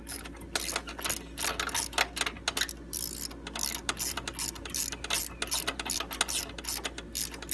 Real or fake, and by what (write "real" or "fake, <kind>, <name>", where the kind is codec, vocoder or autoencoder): real